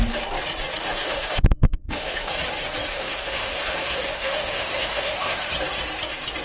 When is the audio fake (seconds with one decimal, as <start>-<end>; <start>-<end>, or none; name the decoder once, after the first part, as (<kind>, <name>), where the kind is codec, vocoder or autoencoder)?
0.8-2.3 (autoencoder, DAC-VAE); 2.9-5.5